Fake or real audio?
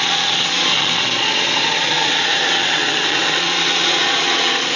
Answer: fake